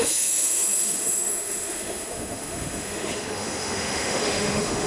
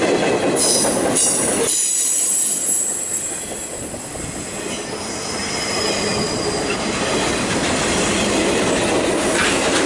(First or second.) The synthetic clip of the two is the first